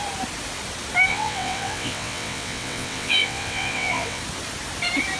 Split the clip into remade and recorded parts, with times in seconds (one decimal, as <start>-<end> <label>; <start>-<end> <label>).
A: 0.0-1.1 recorded; 1.1-4.2 remade; 4.2-5.2 recorded